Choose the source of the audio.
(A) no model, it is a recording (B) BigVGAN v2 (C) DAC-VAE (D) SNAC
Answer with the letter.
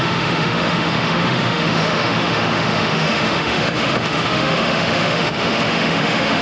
C